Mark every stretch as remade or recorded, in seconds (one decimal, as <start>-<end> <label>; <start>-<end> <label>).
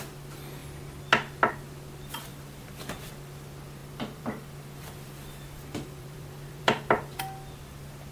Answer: 0.0-2.3 recorded; 2.3-3.1 remade; 3.1-3.8 recorded; 3.8-7.2 remade; 7.2-8.1 recorded